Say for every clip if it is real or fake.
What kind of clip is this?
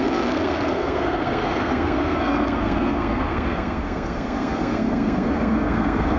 fake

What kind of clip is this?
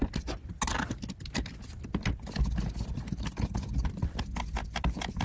real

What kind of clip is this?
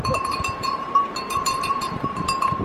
fake